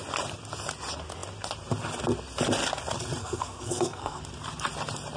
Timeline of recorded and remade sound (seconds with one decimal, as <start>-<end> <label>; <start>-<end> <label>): 0.0-3.2 recorded; 3.2-4.2 remade; 4.2-5.2 recorded